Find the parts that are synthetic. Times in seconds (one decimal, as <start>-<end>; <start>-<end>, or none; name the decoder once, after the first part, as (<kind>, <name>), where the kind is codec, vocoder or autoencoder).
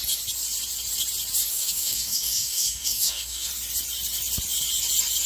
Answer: 1.5-3.5 (codec, DAC)